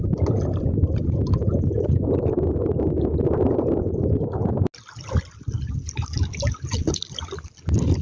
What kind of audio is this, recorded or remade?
recorded